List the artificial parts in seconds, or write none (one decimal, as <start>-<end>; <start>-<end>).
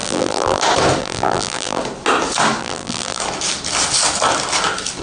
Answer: 0.0-0.6; 1.0-1.8; 2.6-3.2